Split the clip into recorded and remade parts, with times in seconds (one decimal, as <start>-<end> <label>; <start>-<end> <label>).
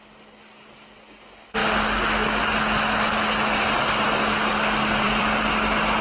0.0-4.5 recorded; 4.5-5.4 remade; 5.4-6.0 recorded